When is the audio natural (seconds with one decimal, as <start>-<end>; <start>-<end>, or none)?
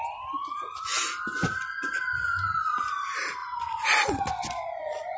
0.0-5.2